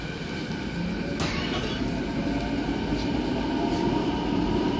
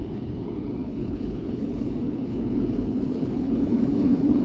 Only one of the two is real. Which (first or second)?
first